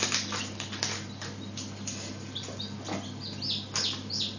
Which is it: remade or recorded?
recorded